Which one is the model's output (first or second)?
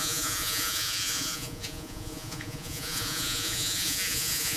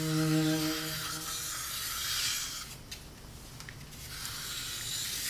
first